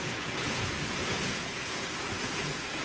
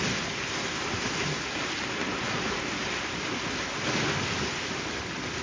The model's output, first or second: first